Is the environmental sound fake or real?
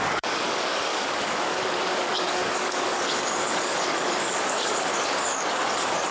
fake